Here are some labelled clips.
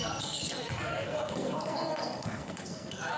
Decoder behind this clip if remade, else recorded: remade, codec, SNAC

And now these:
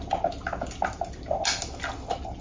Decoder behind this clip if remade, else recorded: recorded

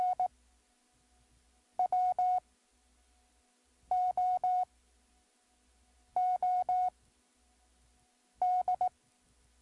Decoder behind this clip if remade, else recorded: recorded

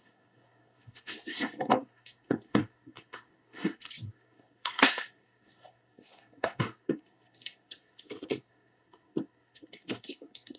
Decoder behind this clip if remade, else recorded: remade, codec, SNAC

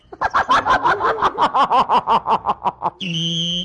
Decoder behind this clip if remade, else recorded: recorded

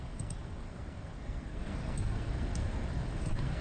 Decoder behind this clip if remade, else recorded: remade, codec, SNAC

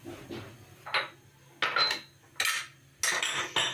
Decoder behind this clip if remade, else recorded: recorded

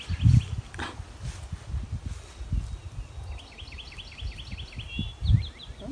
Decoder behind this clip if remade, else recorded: recorded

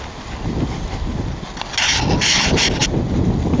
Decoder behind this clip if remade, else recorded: recorded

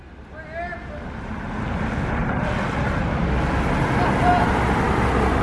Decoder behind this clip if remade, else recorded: recorded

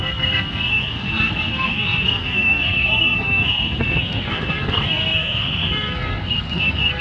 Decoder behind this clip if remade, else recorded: remade, codec, SNAC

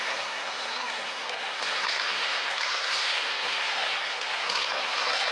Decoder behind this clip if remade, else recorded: remade, codec, SNAC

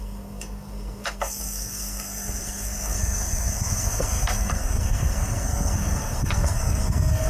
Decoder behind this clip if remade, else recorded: remade, codec, SNAC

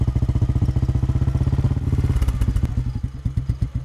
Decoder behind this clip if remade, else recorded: recorded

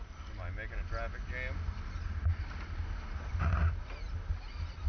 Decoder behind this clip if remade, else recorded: recorded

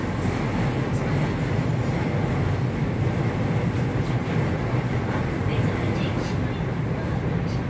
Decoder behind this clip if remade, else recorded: recorded